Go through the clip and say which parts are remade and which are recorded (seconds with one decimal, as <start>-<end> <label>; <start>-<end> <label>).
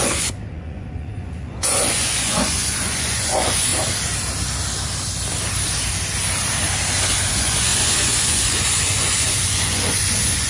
0.0-3.7 remade; 3.7-7.3 recorded; 7.3-10.5 remade